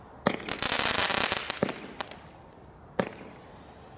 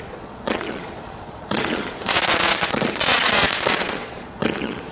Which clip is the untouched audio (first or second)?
first